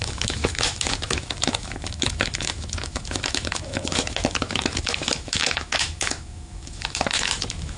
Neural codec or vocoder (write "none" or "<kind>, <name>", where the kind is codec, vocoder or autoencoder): autoencoder, DAC-VAE